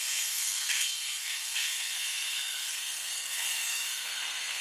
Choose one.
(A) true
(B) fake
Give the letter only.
B